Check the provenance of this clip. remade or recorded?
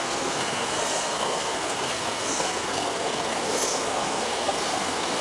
remade